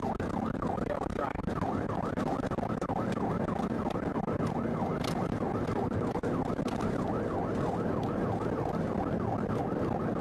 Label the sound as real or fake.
real